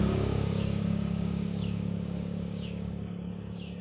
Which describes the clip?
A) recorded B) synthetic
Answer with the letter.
B